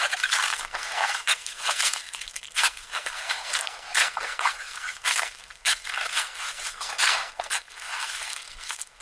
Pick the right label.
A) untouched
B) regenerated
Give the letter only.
B